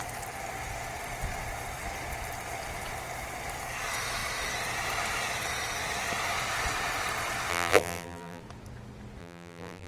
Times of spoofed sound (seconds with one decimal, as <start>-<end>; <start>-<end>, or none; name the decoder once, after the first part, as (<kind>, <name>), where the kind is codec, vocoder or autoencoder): 7.5-8.4 (vocoder, BigVGAN v2); 9.2-9.9